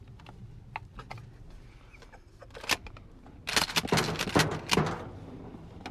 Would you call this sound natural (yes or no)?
yes